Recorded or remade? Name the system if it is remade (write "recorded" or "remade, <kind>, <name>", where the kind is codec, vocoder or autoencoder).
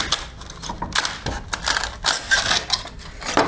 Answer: recorded